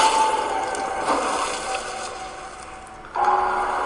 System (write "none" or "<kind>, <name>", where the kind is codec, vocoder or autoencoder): none